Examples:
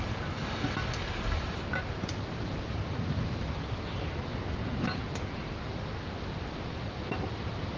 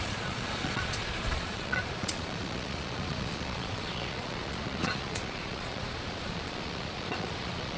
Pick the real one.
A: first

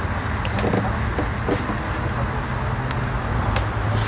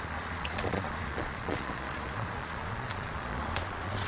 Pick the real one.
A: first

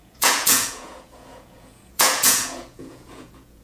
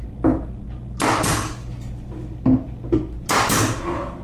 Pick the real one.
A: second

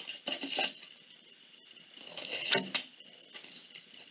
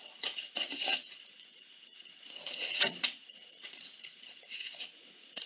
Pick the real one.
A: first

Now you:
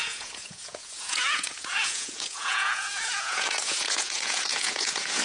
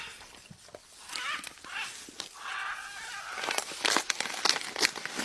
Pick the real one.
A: second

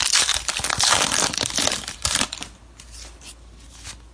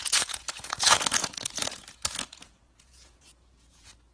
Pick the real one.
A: first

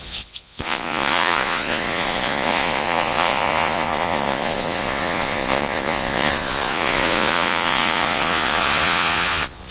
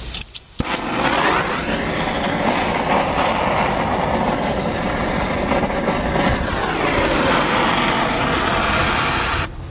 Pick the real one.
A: second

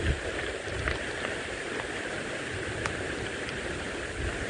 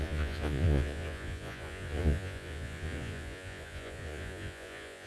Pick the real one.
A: first